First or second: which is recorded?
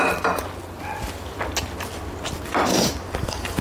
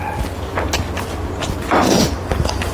second